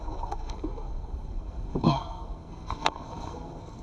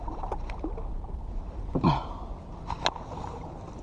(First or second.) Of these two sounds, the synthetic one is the first